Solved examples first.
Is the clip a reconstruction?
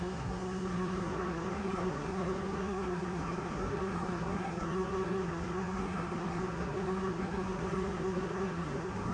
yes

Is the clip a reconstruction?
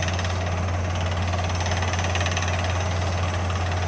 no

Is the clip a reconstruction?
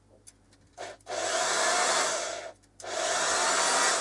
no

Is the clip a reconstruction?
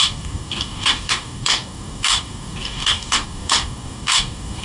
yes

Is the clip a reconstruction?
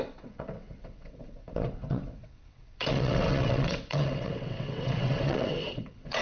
yes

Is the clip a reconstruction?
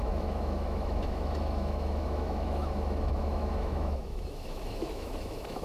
yes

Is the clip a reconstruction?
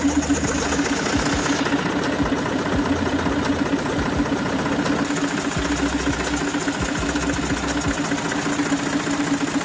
no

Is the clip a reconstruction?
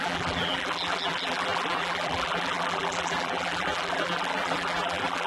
yes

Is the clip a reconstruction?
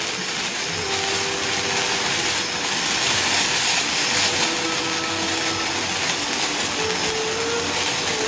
no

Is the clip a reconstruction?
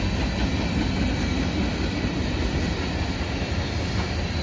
no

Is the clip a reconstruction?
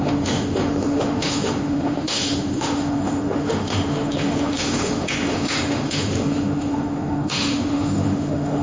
yes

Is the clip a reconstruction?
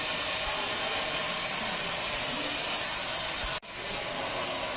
no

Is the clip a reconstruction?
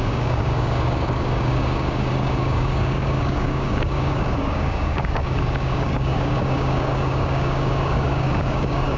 yes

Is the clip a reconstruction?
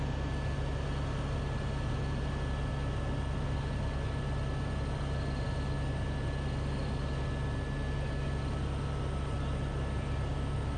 no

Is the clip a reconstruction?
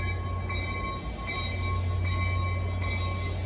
no